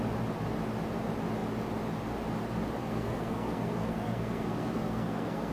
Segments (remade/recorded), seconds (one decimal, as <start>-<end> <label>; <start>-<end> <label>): 0.0-2.8 recorded; 2.8-5.5 remade